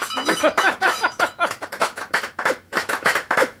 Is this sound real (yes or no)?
no